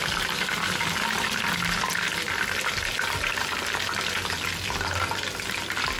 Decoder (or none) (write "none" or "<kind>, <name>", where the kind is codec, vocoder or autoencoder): none